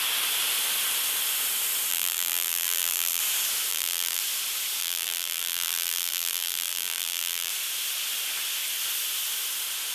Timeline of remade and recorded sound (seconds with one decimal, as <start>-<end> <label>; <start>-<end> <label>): 0.0-1.9 recorded; 1.9-3.2 remade; 3.2-3.7 recorded; 3.7-4.2 remade; 4.2-4.8 recorded; 4.8-7.5 remade; 7.5-9.9 recorded